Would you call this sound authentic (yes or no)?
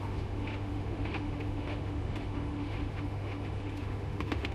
no